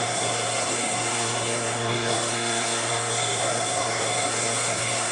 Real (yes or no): no